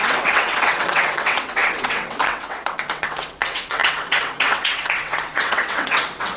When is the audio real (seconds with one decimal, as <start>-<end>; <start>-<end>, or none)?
none